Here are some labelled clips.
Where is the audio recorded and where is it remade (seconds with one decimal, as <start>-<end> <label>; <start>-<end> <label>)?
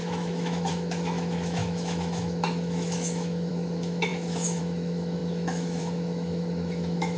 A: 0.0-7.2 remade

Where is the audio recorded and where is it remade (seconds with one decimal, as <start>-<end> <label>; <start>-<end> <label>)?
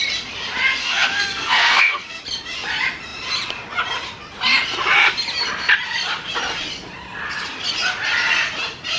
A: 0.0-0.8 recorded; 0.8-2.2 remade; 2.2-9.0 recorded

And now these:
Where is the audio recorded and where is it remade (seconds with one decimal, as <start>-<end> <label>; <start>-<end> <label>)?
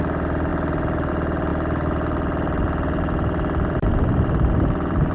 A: 0.0-5.1 recorded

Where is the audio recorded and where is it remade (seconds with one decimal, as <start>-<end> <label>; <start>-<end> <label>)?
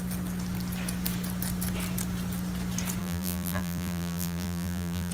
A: 0.0-3.0 recorded; 3.0-5.1 remade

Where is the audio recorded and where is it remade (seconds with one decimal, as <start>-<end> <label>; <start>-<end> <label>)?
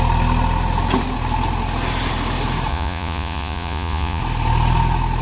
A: 0.0-2.7 recorded; 2.7-4.2 remade; 4.2-5.2 recorded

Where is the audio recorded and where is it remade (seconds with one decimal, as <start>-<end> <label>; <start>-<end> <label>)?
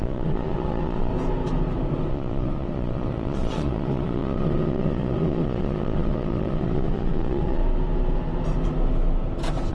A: 0.0-1.1 remade; 1.1-2.1 recorded; 2.1-7.6 remade; 7.6-9.7 recorded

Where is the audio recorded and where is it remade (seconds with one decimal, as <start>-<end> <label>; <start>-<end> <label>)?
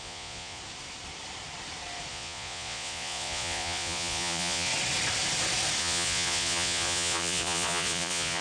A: 0.0-0.6 remade; 0.6-2.1 recorded; 2.1-4.7 remade; 4.7-5.8 recorded; 5.8-8.4 remade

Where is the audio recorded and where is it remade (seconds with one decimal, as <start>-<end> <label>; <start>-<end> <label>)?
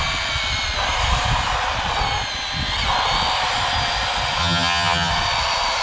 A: 0.0-4.4 recorded; 4.4-5.1 remade; 5.1-5.8 recorded